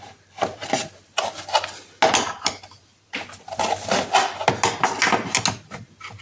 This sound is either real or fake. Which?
real